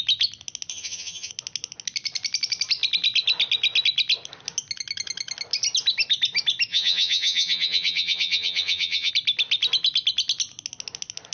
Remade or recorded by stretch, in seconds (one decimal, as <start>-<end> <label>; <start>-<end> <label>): 0.0-0.7 recorded; 0.7-1.3 remade; 1.3-6.7 recorded; 6.7-9.1 remade; 9.1-11.3 recorded